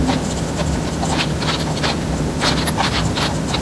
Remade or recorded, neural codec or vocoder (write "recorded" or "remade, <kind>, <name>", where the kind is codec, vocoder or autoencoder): recorded